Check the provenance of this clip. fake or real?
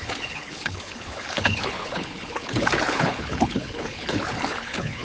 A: fake